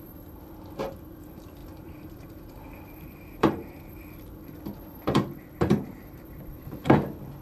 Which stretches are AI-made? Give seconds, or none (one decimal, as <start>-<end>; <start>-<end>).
0.0-7.4